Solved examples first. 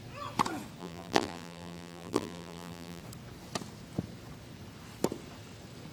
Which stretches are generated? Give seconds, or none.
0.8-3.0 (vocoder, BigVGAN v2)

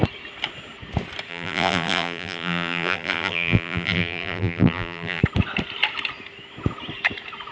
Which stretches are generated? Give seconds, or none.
1.3-5.2 (vocoder, BigVGAN v2)

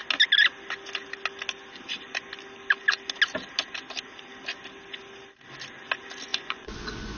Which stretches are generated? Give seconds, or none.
6.3-7.2 (vocoder, Vocos)

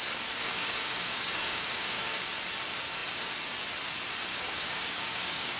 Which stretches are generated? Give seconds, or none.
0.4-2.2 (codec, DAC); 4.3-5.6

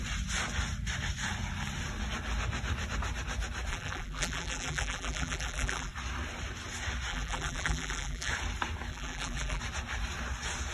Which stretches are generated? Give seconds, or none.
3.7-5.9 (vocoder, BigVGAN v2); 7.1-8.3; 8.9-9.6

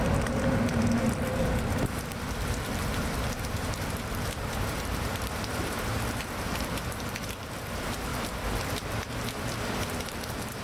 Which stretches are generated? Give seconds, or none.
0.0-8.1 (vocoder, BigVGAN v2); 9.0-10.6

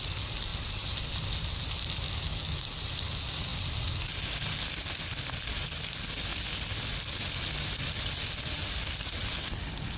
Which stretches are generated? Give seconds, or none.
0.5-1.1 (vocoder, BigVGAN v2)